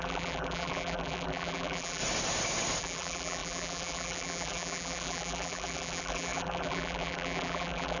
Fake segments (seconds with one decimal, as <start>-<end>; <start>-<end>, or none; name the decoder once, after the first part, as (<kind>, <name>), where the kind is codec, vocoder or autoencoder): 0.0-2.0 (vocoder, BigVGAN v2); 2.8-8.0